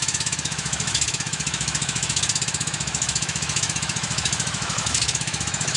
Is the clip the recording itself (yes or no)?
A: no